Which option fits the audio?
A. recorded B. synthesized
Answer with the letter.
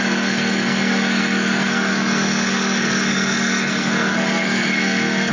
B